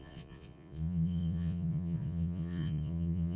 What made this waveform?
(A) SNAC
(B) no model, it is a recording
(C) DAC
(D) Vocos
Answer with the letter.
D